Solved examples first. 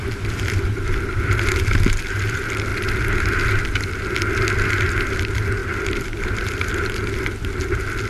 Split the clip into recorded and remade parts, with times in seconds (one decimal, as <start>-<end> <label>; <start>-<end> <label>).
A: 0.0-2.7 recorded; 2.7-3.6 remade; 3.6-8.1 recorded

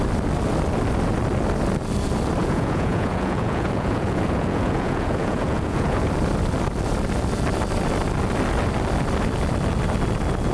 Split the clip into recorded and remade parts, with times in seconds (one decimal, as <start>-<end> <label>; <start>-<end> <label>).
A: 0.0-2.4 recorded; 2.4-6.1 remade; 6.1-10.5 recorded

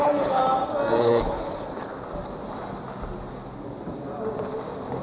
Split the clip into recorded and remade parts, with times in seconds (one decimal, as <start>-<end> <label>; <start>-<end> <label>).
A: 0.0-0.4 remade; 0.4-1.0 recorded; 1.0-1.9 remade; 1.9-5.0 recorded

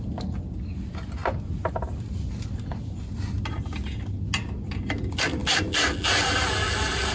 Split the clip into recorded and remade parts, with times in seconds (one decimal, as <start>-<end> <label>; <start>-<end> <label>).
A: 0.0-7.1 recorded

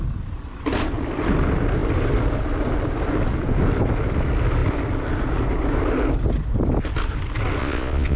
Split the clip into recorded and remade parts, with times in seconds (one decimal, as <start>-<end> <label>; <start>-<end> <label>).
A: 0.0-7.6 recorded; 7.6-8.2 remade

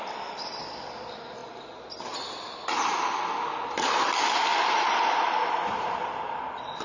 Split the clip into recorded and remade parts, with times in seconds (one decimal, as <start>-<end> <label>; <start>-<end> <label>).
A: 0.0-1.4 remade; 1.4-3.6 recorded; 3.6-4.5 remade; 4.5-5.8 recorded; 5.8-6.8 remade

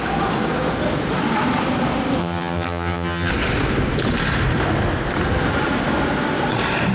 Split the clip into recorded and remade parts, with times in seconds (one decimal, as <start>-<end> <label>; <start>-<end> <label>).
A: 0.0-2.2 recorded; 2.2-3.3 remade; 3.3-6.9 recorded